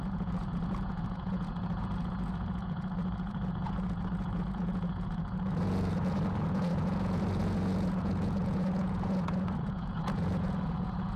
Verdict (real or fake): fake